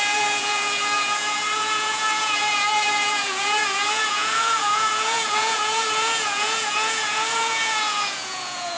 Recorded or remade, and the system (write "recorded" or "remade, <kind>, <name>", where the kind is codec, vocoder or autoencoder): remade, vocoder, Vocos